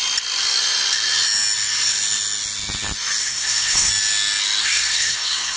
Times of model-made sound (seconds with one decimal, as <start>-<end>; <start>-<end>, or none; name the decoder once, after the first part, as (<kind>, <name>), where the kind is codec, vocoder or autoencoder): 3.2-3.9 (codec, SNAC); 4.6-5.6